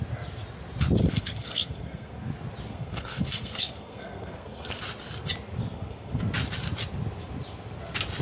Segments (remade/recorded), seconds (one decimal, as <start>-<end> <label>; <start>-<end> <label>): 0.0-1.0 recorded; 1.0-2.3 remade; 2.3-2.7 recorded; 2.7-4.8 remade; 4.8-5.6 recorded; 5.6-6.2 remade; 6.2-8.2 recorded